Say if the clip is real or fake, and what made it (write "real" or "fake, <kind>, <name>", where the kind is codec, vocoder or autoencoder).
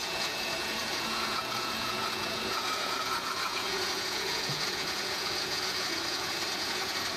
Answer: fake, vocoder, Vocos